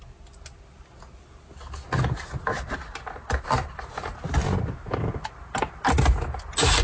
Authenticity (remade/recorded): recorded